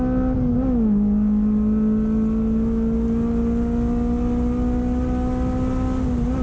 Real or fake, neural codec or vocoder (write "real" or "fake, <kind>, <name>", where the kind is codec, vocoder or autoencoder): real